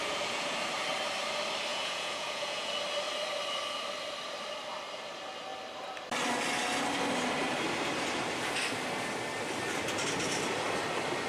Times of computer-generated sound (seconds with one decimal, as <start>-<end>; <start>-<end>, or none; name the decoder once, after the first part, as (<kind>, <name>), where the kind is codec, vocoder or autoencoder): 1.7-2.7 (vocoder, Vocos)